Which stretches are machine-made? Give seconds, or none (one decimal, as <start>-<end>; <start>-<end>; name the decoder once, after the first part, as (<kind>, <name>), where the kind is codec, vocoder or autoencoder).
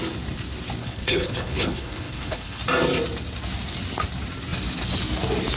0.8-2.6 (codec, HILCodec)